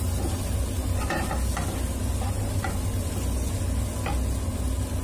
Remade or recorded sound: recorded